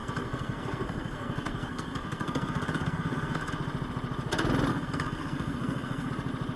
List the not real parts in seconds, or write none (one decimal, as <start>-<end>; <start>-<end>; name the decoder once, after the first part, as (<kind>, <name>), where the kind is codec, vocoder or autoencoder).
0.0-3.5 (codec, SNAC); 4.7-6.1